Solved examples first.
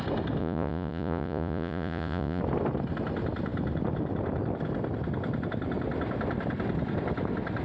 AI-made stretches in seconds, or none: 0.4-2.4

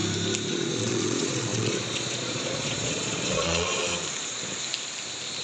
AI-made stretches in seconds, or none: 0.5-3.8

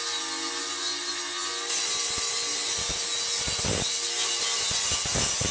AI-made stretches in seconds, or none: none

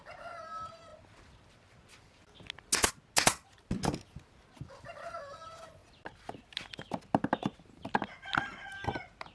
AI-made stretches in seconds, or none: none

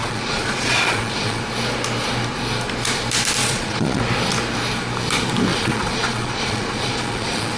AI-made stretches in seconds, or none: 0.0-1.4; 3.4-4.0; 5.5-7.6

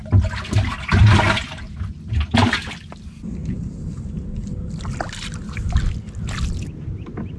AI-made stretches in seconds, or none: none

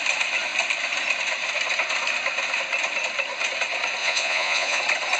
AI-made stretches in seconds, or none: 4.0-4.8

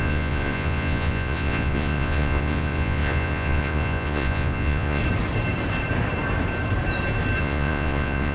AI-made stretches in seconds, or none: 0.0-5.0; 7.4-8.3